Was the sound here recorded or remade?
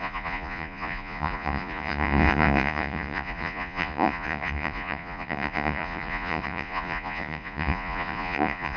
remade